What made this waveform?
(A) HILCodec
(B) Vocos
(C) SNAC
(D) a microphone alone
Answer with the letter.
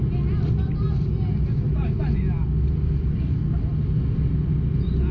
D